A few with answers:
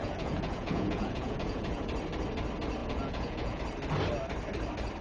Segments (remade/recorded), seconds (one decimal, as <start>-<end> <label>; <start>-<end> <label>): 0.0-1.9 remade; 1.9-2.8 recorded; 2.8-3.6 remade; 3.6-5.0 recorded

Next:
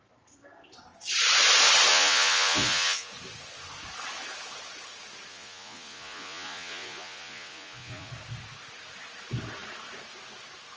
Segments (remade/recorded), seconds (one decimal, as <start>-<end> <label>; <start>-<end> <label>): 0.0-1.9 recorded; 1.9-3.1 remade; 3.1-5.3 recorded; 5.3-8.1 remade; 8.1-10.8 recorded

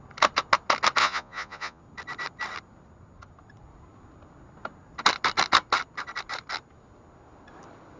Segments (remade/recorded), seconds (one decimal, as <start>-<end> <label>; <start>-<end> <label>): 0.0-1.0 recorded; 1.0-1.8 remade; 1.8-8.0 recorded

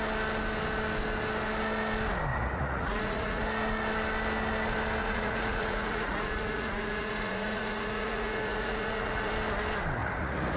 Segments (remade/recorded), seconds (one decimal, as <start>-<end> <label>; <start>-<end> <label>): 0.0-2.3 recorded; 2.3-3.4 remade; 3.4-5.0 recorded; 5.0-9.3 remade; 9.3-10.0 recorded; 10.0-10.6 remade

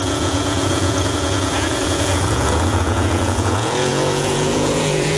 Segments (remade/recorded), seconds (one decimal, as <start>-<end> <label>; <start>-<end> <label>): 0.0-5.2 remade

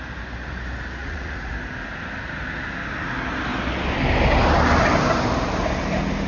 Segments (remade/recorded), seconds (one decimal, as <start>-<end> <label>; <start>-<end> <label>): 0.0-1.0 recorded; 1.0-1.5 remade; 1.5-6.3 recorded